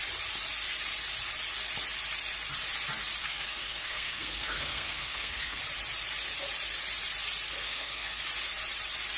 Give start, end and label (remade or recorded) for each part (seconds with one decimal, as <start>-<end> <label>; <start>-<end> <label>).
0.0-3.2 recorded; 3.2-5.6 remade; 5.6-7.6 recorded; 7.6-8.2 remade; 8.2-9.2 recorded